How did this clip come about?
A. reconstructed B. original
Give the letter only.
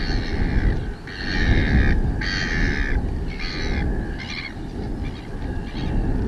B